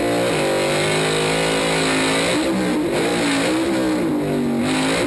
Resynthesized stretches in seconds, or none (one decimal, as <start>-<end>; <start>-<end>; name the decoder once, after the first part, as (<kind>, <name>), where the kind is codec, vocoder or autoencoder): none